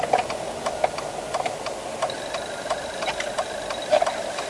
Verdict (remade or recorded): recorded